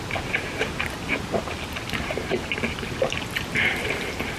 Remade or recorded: recorded